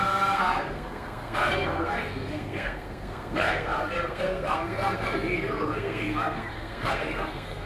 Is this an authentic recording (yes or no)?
no